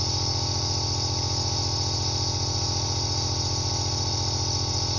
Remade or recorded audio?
recorded